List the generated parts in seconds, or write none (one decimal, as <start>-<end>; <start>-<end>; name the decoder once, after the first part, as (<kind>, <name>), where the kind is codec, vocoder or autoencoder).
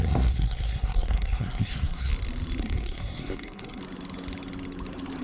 0.0-2.1 (codec, SNAC); 2.6-3.8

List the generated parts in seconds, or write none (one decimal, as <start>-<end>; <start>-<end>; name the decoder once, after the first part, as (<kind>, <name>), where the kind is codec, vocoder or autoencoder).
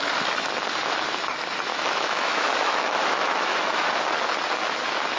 1.7-3.9 (autoencoder, DAC-VAE)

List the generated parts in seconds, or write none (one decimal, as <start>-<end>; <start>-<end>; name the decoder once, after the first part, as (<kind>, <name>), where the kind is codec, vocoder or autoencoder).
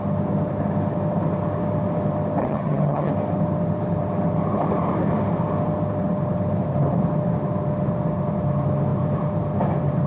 2.4-3.1 (vocoder, HiFi-GAN)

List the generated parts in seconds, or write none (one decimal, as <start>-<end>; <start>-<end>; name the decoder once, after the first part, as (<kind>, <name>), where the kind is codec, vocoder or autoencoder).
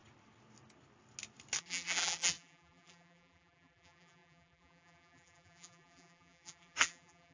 1.6-7.3 (vocoder, BigVGAN v2)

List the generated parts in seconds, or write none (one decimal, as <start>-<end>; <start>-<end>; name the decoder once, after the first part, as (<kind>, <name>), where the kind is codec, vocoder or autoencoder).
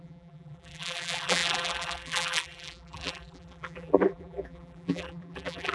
0.0-5.7 (vocoder, BigVGAN v2)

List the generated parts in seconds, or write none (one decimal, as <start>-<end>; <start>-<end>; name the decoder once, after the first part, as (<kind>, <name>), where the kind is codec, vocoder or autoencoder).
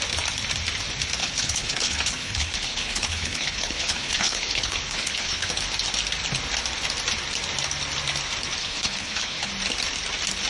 1.2-5.5 (codec, HILCodec); 8.6-9.5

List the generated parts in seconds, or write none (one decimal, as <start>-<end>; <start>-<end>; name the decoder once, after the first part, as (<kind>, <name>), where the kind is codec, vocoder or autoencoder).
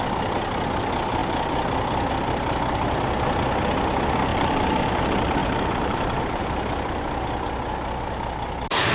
4.3-5.0 (vocoder, BigVGAN v2); 5.4-6.4